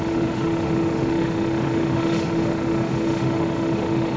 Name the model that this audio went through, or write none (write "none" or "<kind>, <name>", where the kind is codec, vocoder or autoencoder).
autoencoder, DAC-VAE